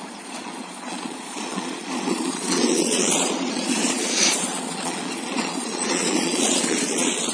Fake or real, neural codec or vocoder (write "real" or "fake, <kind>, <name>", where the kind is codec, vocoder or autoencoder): fake, vocoder, Vocos